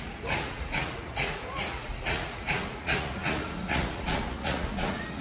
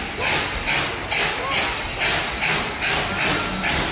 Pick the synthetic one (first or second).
first